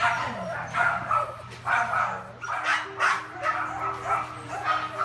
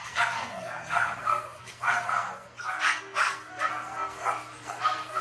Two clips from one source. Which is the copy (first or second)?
second